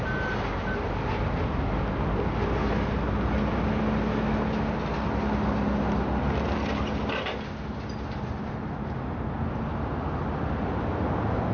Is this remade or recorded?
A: recorded